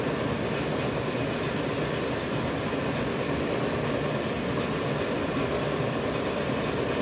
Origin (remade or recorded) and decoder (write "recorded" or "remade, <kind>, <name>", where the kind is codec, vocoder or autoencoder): recorded